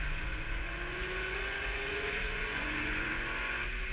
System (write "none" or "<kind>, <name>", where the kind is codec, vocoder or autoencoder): vocoder, Vocos